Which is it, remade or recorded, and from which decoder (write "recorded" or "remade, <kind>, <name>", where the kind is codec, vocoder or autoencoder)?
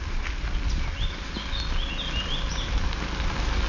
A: recorded